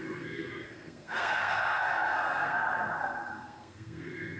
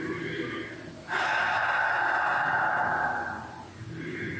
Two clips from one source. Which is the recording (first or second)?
second